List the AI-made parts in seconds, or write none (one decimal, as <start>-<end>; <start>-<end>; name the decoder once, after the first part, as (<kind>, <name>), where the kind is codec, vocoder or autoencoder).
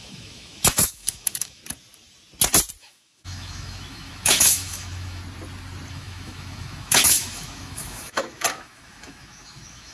0.0-1.6 (autoencoder, DAC-VAE); 2.8-5.2; 5.9-9.9